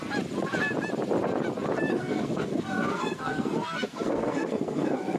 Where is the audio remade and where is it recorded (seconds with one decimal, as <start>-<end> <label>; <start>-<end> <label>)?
0.0-1.9 recorded; 1.9-5.2 remade